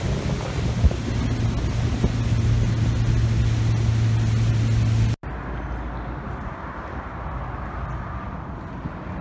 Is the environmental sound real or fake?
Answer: real